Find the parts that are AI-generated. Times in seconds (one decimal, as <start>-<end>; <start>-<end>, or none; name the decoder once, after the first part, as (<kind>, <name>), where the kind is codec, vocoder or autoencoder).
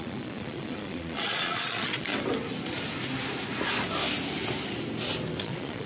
0.0-2.1 (vocoder, Vocos); 5.4-5.9